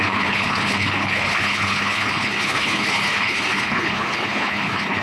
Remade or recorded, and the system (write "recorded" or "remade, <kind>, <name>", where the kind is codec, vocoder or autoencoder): remade, codec, HILCodec